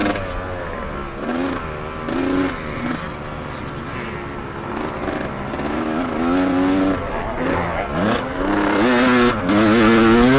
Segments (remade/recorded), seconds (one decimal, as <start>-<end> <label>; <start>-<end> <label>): 0.0-10.4 recorded